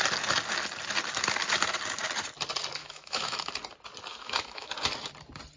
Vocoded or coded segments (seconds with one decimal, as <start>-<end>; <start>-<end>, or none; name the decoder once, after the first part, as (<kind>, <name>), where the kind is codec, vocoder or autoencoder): 2.8-3.5 (autoencoder, DAC-VAE); 4.1-4.7